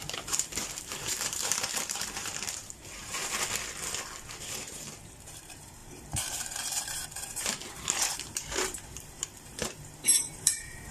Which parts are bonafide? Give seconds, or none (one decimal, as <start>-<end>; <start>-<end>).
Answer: 3.2-4.5